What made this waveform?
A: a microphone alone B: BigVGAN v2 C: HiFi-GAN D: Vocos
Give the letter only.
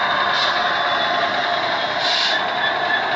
A